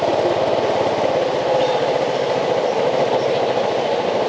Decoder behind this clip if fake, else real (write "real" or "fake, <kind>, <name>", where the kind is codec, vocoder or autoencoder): real